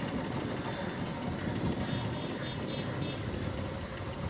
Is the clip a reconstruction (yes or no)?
no